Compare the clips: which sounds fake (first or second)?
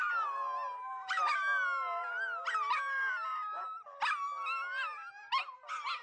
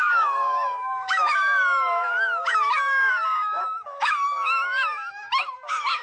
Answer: second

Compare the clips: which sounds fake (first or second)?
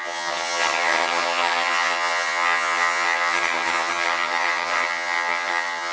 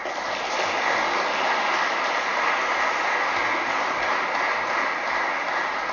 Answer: first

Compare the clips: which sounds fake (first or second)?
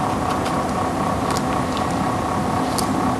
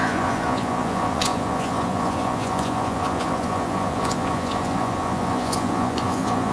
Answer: second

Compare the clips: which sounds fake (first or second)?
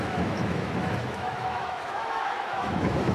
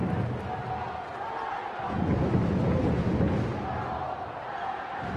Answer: first